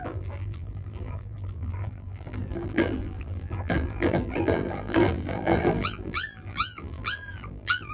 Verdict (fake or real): fake